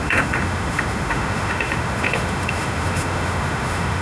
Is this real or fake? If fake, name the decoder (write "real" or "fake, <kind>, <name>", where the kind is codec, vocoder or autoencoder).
fake, autoencoder, DAC-VAE